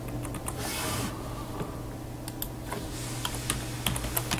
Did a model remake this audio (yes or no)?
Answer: no